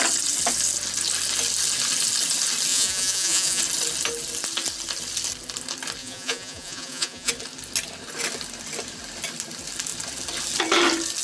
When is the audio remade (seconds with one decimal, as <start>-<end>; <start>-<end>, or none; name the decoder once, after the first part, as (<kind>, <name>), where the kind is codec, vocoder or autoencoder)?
2.7-3.6 (vocoder, Vocos); 6.0-7.3